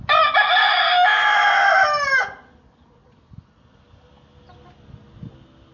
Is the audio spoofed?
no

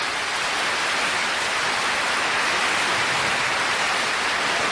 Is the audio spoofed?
no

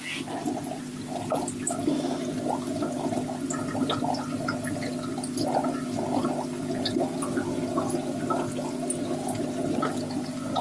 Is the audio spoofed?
no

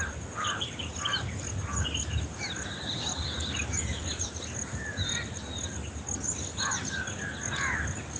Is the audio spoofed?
no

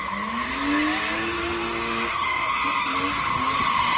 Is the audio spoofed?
no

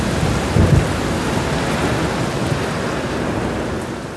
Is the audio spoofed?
no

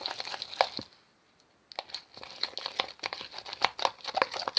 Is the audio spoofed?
no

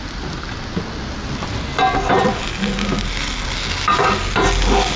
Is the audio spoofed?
no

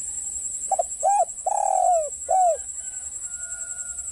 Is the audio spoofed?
no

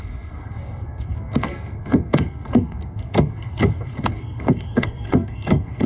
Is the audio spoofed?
yes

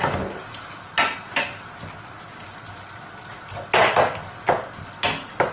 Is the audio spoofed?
no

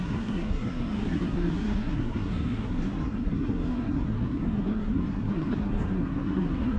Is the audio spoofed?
yes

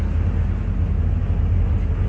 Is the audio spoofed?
no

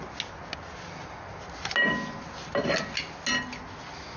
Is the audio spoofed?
no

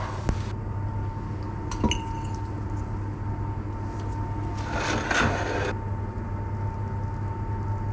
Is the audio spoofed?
no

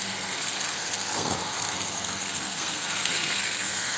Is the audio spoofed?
yes